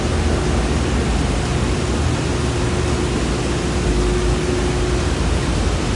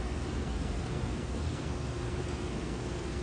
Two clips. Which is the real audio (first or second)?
first